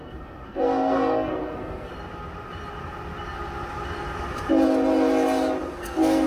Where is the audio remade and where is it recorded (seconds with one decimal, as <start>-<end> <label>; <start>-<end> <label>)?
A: 0.0-1.9 remade; 1.9-5.7 recorded; 5.7-6.3 remade

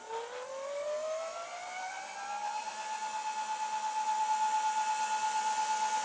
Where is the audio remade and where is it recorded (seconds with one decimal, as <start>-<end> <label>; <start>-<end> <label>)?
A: 0.0-6.0 recorded